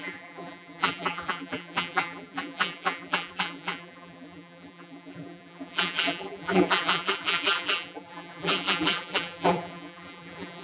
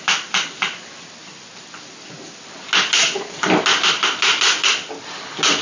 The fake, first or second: first